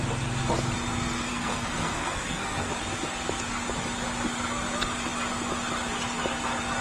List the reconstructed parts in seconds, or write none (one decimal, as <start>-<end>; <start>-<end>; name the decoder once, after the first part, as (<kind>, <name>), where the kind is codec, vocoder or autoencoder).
1.3-2.7 (codec, SNAC)